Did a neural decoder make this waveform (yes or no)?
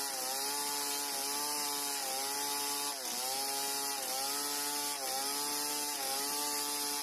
no